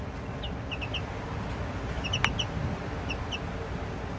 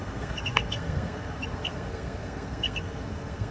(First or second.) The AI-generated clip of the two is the second